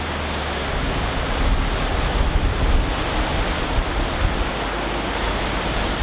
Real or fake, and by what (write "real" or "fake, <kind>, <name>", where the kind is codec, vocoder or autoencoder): real